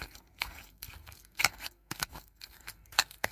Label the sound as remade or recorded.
remade